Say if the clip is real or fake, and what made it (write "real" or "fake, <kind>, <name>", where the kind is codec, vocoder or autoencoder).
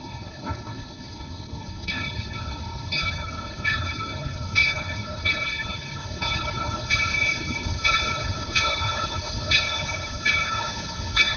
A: fake, codec, HILCodec